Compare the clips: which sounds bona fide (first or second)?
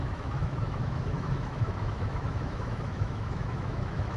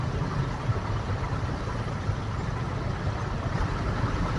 second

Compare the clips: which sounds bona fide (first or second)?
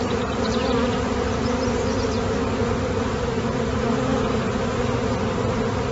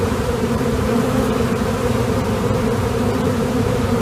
first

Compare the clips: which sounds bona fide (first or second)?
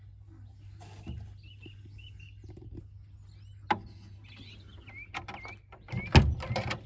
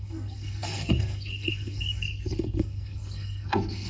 first